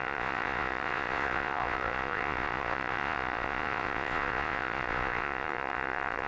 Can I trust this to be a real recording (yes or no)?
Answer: no